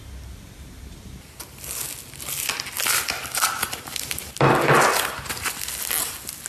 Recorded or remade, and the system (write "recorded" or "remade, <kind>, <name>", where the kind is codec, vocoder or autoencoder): recorded